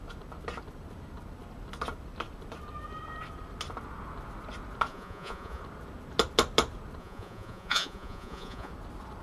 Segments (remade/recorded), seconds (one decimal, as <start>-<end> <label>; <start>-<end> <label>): 0.0-4.9 recorded; 4.9-5.6 remade; 5.6-7.0 recorded; 7.0-8.7 remade; 8.7-9.2 recorded